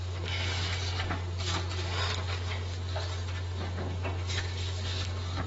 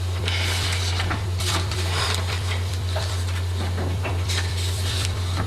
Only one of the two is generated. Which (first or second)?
second